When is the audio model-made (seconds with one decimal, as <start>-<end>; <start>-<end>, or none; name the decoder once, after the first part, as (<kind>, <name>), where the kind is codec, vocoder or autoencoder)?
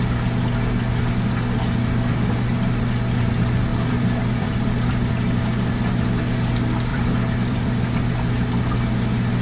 3.7-5.1 (vocoder, BigVGAN v2); 6.9-8.2